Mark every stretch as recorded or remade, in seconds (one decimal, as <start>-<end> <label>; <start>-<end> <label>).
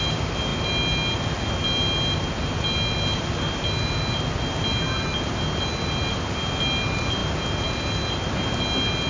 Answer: 0.0-9.1 recorded